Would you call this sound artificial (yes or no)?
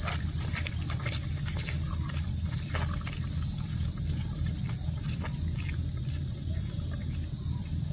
no